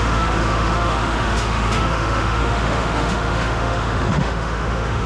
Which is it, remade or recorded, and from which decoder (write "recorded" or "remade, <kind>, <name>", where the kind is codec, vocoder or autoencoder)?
remade, autoencoder, DAC-VAE